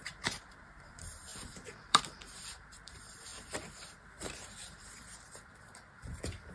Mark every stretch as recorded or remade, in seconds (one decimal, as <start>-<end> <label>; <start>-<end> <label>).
0.0-6.5 remade